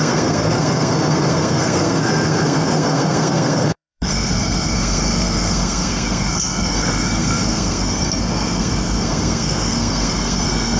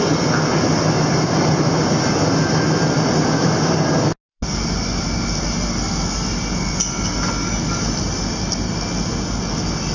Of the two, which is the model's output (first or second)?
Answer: first